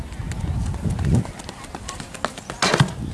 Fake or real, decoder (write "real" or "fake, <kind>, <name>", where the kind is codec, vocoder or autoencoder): real